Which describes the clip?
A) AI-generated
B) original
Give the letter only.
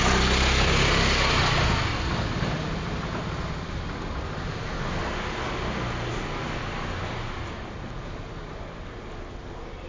B